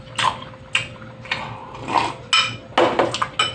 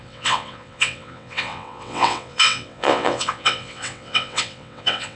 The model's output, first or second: second